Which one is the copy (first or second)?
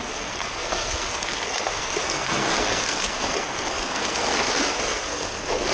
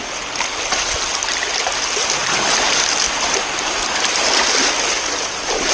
first